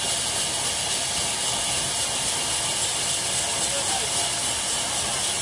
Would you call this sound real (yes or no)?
yes